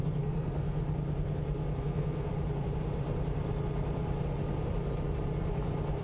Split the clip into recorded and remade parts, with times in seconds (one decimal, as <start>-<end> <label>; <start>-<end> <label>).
0.0-0.8 remade; 0.8-1.8 recorded; 1.8-2.3 remade; 2.3-6.0 recorded